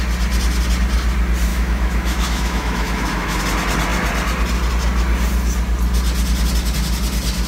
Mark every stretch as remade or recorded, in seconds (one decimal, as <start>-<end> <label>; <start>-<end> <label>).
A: 0.0-1.5 recorded; 1.5-3.4 remade; 3.4-7.5 recorded